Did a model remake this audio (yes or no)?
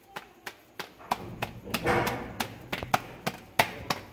no